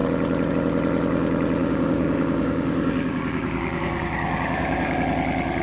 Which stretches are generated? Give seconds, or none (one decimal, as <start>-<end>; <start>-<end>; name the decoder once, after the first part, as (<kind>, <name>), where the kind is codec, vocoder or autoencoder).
1.6-5.0 (codec, DAC)